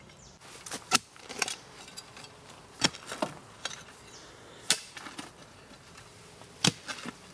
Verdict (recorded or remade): recorded